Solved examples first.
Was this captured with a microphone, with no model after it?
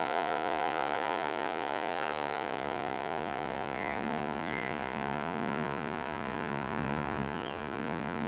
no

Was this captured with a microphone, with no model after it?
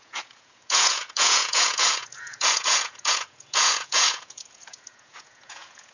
no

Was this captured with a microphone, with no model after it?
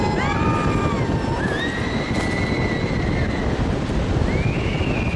yes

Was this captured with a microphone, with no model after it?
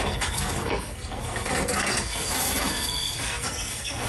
no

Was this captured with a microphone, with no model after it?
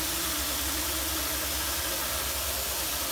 yes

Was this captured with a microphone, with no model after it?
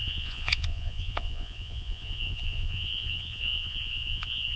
no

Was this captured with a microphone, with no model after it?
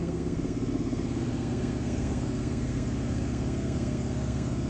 no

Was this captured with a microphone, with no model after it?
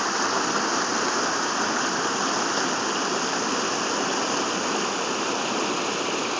yes